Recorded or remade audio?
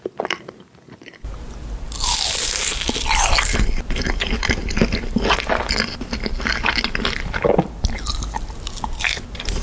recorded